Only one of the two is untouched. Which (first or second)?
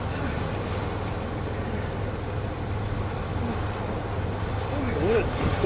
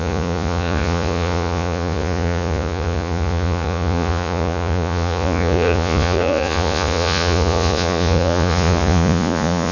first